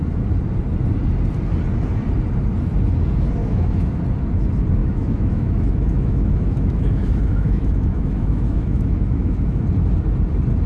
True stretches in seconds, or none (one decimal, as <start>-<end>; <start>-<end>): 0.0-3.4; 4.0-4.8; 9.6-10.7